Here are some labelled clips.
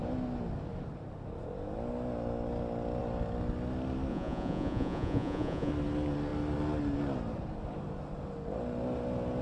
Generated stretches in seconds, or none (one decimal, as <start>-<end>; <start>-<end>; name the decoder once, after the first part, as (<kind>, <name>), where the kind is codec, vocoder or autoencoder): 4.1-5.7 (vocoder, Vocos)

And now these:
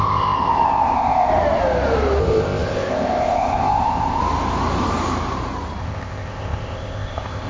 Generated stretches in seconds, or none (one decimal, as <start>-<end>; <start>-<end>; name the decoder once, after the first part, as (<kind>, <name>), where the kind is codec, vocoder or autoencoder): 0.0-1.3 (codec, ZipCodec); 2.2-4.2; 5.8-7.5

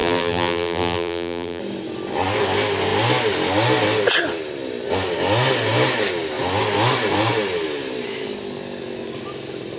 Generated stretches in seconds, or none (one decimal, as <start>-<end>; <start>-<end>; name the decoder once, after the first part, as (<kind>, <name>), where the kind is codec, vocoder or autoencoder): 0.0-1.6 (vocoder, BigVGAN v2)